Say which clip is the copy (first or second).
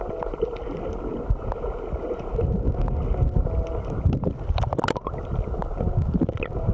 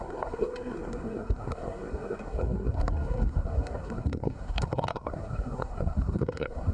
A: second